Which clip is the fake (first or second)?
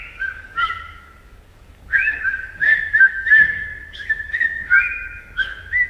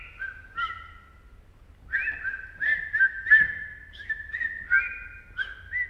first